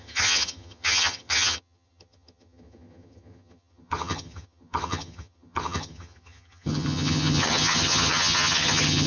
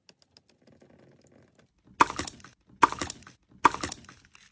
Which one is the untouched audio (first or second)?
second